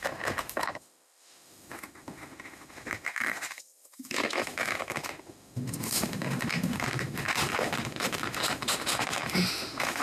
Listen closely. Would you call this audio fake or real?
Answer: fake